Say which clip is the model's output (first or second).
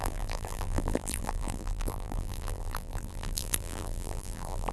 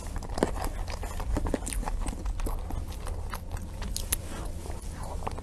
first